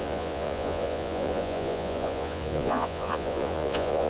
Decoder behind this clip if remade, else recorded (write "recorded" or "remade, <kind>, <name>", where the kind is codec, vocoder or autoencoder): remade, vocoder, Vocos